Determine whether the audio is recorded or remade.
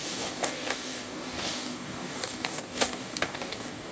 remade